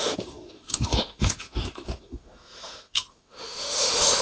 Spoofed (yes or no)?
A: yes